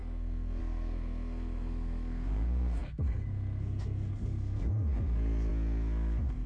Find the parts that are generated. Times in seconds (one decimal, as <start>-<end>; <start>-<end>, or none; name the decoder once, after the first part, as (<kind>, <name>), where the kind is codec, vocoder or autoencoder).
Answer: 0.0-6.5 (codec, SNAC)